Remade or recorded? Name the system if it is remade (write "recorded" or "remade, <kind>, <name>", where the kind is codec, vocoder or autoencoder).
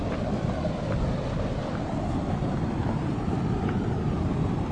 recorded